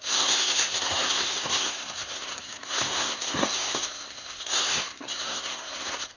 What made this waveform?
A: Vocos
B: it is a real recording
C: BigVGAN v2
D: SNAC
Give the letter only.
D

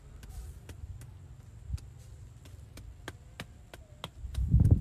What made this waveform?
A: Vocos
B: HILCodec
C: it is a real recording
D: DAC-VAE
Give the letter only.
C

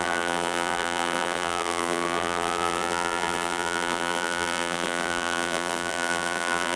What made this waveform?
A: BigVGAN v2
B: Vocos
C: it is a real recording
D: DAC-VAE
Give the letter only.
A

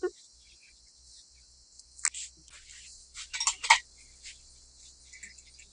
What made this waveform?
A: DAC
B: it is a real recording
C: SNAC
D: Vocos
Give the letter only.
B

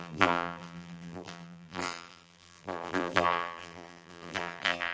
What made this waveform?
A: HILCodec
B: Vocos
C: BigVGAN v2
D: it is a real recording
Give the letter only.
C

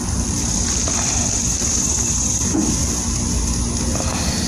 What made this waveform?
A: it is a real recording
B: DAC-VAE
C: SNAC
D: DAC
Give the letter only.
A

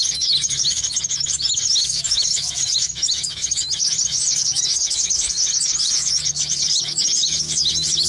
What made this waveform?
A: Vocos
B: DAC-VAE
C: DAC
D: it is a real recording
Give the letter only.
B